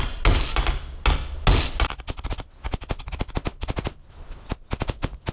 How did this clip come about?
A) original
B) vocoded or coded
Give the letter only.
A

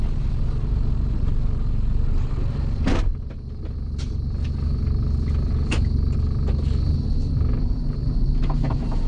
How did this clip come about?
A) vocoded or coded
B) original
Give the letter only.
B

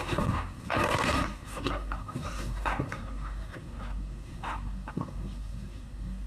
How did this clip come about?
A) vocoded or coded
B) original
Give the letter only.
A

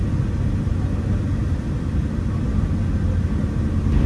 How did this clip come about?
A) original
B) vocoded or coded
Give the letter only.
A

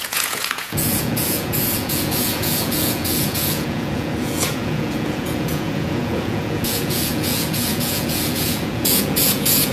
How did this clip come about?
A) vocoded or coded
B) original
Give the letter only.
A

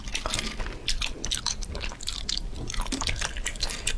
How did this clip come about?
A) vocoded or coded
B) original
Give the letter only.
B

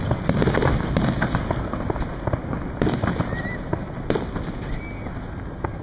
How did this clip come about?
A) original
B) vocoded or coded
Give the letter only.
A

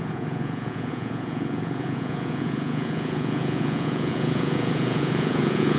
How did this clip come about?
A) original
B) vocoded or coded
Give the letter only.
B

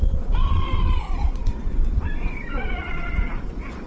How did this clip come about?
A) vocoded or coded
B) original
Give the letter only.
A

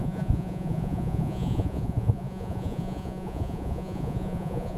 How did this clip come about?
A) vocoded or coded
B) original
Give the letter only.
A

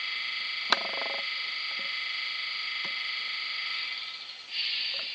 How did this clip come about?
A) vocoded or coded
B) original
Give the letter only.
A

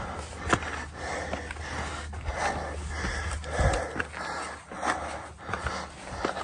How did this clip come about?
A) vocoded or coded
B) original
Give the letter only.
B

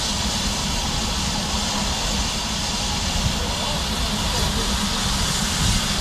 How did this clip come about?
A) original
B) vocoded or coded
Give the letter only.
A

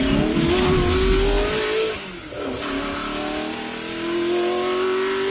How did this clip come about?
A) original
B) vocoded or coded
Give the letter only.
A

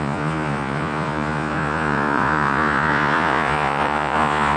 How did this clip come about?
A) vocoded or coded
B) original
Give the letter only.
A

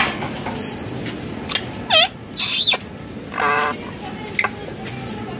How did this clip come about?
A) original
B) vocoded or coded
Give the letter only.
A